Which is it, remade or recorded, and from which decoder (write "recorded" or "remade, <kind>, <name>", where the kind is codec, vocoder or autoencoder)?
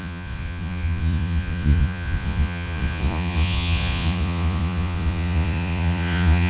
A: remade, vocoder, Vocos